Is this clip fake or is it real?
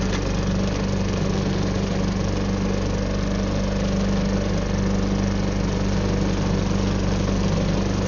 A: real